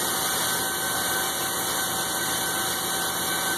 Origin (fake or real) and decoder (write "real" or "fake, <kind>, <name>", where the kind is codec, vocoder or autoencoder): real